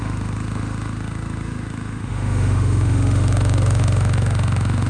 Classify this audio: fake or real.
fake